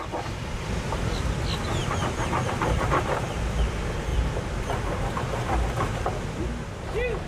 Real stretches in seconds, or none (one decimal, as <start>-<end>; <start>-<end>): 0.0-1.8; 3.3-4.1; 5.5-7.3